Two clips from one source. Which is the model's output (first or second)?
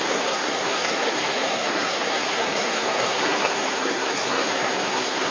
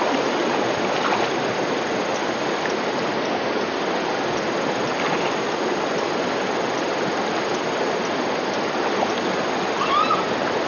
first